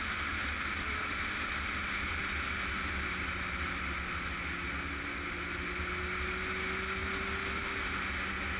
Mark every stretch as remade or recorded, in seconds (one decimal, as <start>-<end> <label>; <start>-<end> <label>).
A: 0.0-8.6 recorded